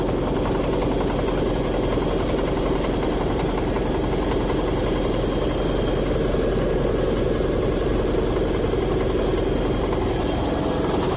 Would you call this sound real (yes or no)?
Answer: yes